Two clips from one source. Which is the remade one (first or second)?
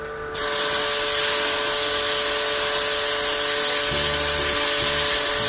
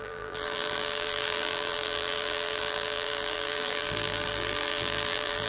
second